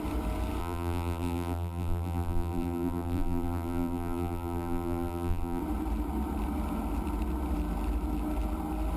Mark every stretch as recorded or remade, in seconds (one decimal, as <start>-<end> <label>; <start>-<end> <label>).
0.0-0.6 recorded; 0.6-5.6 remade; 5.6-9.0 recorded